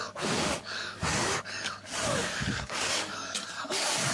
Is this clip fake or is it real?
fake